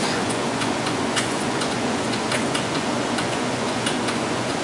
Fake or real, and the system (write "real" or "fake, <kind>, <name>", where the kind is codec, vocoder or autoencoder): fake, vocoder, Vocos